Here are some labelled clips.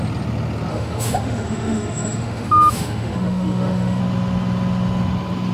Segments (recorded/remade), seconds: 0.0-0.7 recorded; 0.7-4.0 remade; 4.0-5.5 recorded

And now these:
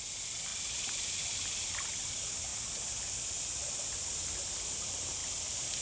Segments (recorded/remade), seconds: 0.0-5.8 recorded

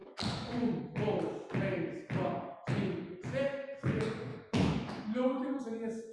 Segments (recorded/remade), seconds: 0.0-0.8 remade; 0.8-4.3 recorded; 4.3-5.6 remade; 5.6-6.1 recorded

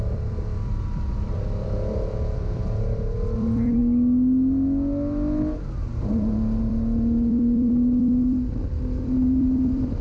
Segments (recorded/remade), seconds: 0.0-3.8 remade; 3.8-6.6 recorded; 6.6-10.0 remade

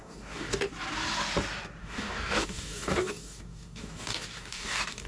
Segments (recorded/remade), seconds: 0.0-0.7 remade; 0.7-1.8 recorded; 1.8-5.1 remade

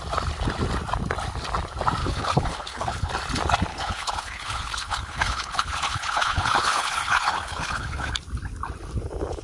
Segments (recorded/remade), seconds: 0.0-2.0 recorded; 2.0-3.1 remade; 3.1-3.7 recorded; 3.7-8.1 remade; 8.1-9.4 recorded

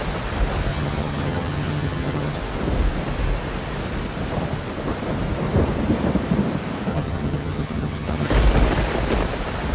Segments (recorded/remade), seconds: 0.0-0.7 recorded; 0.7-2.4 remade; 2.4-6.9 recorded; 6.9-8.3 remade; 8.3-9.7 recorded

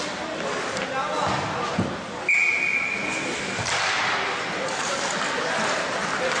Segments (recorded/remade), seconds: 0.0-6.4 recorded